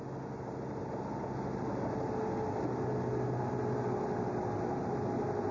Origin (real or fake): real